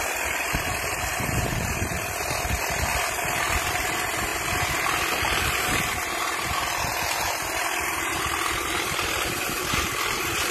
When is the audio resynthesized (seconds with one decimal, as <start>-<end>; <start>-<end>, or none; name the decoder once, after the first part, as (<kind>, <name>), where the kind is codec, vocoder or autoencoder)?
0.0-2.9 (vocoder, BigVGAN v2); 3.7-4.3; 6.5-10.5